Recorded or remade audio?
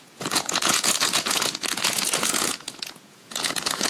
remade